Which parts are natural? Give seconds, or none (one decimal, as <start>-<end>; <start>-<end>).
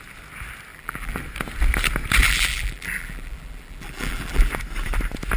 0.0-0.7; 1.2-2.2; 4.5-5.4